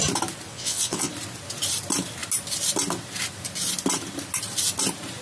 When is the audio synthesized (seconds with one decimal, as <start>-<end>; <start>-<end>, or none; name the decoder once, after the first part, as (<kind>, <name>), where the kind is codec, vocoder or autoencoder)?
0.5-1.1 (vocoder, WaveNeXt)